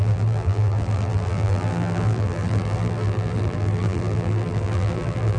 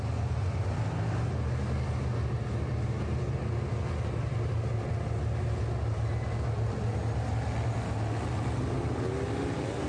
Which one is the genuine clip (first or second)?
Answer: second